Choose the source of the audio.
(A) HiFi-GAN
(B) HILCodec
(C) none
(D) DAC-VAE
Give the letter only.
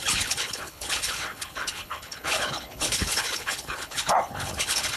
B